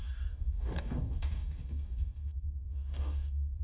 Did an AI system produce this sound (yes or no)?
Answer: yes